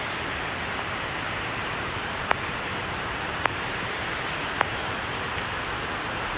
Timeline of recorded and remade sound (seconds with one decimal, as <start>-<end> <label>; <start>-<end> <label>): 0.0-1.6 recorded; 1.6-5.4 remade; 5.4-6.4 recorded